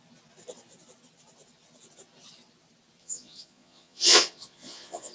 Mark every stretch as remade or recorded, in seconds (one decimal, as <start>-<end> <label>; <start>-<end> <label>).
0.0-3.0 recorded; 3.0-5.1 remade